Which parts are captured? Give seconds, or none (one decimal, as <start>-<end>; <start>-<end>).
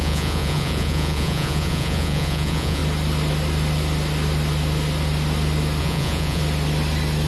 2.8-5.8; 6.4-7.3